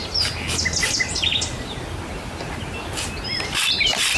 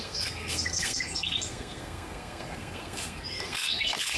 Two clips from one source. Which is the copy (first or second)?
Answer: second